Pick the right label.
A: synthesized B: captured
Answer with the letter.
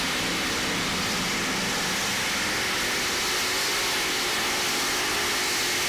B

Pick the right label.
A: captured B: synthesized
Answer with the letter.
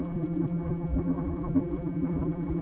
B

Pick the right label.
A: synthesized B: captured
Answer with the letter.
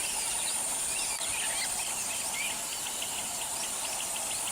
A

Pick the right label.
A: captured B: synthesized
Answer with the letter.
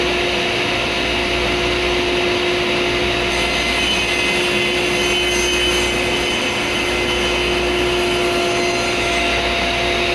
A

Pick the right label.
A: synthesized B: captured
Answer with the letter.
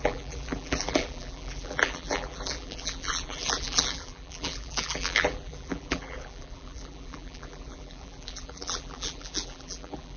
A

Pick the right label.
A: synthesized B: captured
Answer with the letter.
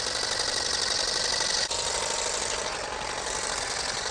B